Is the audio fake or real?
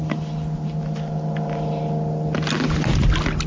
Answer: real